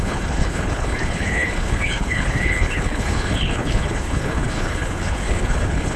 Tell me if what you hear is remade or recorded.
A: remade